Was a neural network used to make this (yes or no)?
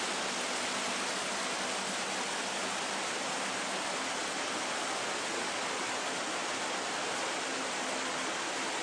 no